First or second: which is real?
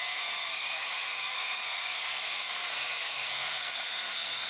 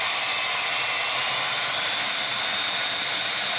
second